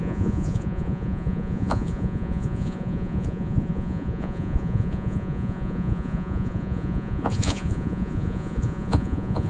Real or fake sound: fake